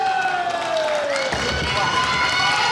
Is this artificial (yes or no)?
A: no